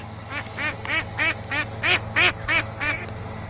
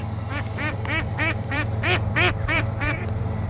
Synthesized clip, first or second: second